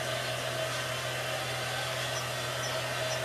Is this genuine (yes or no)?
yes